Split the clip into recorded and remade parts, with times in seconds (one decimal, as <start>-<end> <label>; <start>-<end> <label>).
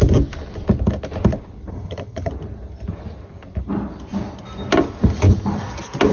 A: 0.0-1.7 recorded; 1.7-2.3 remade; 2.3-6.1 recorded